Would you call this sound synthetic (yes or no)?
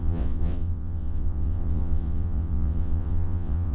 yes